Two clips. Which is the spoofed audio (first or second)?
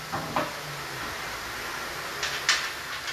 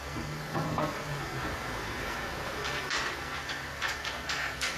second